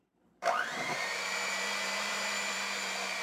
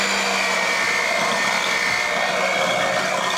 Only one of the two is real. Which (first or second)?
second